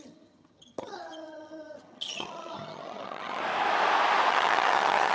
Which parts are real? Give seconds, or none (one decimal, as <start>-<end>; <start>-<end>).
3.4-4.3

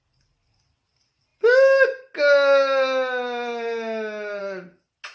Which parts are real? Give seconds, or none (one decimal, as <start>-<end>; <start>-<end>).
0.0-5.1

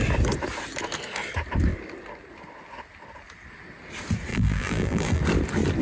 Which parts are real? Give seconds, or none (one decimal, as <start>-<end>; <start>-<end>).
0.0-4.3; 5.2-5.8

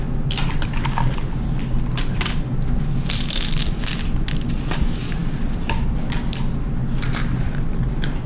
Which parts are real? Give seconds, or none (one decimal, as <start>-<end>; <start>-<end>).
0.0-8.3

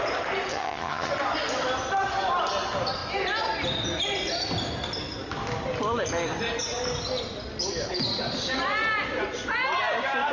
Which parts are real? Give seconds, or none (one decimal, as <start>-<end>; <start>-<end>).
0.0-0.5; 1.1-10.3

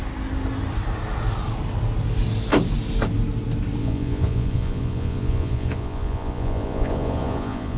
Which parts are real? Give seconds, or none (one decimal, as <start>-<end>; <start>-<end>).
0.0-3.8

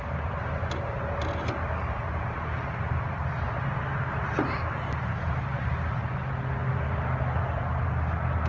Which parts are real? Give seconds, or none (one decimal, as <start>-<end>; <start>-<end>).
0.0-8.5